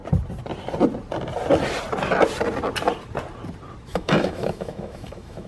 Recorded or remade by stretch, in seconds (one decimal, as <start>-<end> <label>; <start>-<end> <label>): 0.0-3.9 recorded; 3.9-5.5 remade